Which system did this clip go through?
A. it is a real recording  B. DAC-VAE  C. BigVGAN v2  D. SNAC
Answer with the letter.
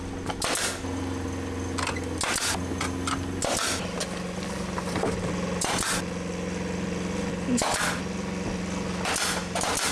A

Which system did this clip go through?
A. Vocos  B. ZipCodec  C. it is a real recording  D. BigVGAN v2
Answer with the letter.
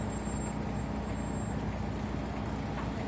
C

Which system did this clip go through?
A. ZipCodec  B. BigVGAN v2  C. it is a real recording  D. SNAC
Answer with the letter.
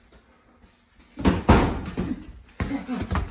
C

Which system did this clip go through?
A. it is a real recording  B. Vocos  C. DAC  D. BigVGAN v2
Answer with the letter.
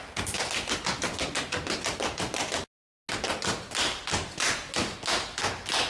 A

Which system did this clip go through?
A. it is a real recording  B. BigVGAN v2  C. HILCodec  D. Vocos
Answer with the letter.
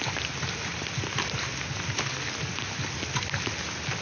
A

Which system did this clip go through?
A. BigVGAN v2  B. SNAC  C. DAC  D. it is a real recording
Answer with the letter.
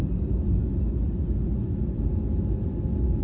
D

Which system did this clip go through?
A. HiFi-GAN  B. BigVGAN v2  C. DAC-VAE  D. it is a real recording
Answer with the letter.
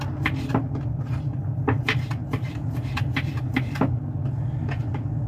B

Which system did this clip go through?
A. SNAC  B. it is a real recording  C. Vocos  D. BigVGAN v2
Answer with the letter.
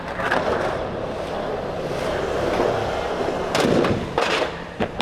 D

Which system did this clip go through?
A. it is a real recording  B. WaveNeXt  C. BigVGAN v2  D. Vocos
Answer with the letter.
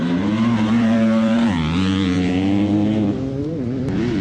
C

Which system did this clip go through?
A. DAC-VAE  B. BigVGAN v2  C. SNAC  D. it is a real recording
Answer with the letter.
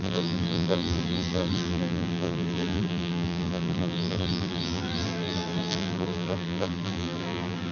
B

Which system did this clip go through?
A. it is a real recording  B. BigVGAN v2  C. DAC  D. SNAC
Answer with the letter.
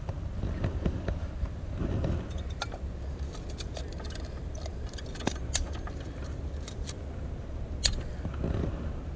A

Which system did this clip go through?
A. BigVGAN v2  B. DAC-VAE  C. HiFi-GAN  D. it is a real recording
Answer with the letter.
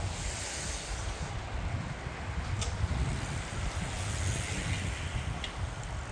D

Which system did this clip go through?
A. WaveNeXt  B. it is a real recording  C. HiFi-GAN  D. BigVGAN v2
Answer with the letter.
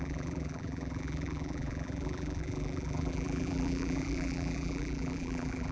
D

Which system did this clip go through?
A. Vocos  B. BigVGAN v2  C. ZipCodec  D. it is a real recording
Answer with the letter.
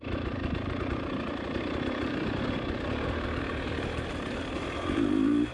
B